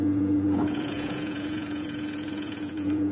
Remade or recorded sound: remade